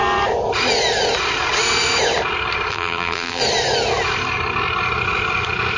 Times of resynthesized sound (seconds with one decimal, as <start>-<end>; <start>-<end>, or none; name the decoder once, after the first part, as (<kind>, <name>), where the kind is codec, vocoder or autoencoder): 2.7-3.4 (vocoder, BigVGAN v2)